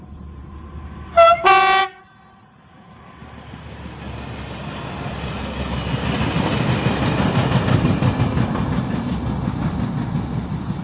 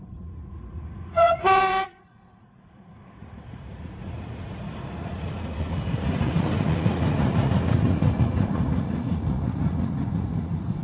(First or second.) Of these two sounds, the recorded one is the first